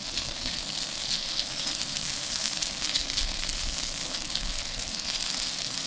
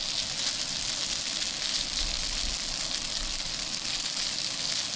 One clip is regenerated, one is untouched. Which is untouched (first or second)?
second